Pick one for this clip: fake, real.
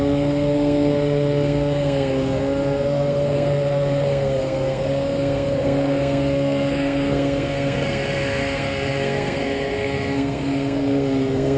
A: fake